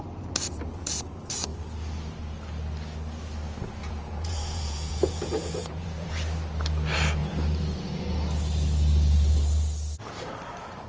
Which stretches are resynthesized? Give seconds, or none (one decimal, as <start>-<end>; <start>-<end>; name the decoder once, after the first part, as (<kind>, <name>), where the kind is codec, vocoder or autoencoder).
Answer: 3.8-6.1 (vocoder, Vocos)